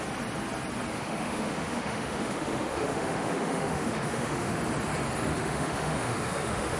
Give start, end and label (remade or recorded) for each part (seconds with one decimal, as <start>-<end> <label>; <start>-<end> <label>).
0.0-0.9 recorded; 0.9-4.6 remade; 4.6-5.3 recorded; 5.3-6.8 remade

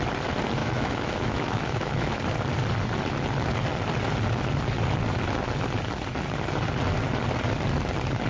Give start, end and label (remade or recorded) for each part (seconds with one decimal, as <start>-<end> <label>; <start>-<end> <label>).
0.0-0.6 recorded; 0.6-2.2 remade; 2.2-8.3 recorded

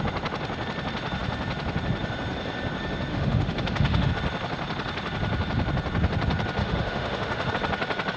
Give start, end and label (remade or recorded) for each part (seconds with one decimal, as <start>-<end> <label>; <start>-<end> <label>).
0.0-3.1 recorded; 3.1-4.1 remade; 4.1-6.6 recorded; 6.6-7.5 remade; 7.5-8.2 recorded